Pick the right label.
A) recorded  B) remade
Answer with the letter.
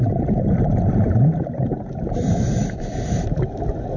A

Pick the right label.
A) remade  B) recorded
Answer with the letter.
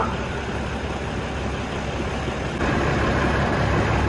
B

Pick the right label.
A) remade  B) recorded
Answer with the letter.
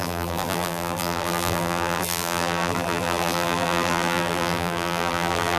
A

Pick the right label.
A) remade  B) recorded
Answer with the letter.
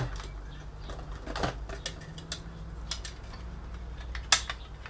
B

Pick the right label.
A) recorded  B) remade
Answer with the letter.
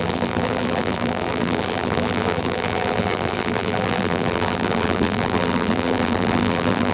B